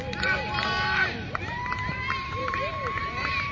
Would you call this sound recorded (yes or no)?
no